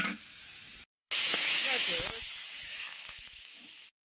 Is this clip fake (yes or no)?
yes